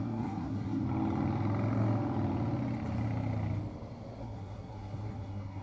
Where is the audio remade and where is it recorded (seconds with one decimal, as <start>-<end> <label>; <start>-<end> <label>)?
0.0-0.8 remade; 0.8-4.2 recorded; 4.2-5.6 remade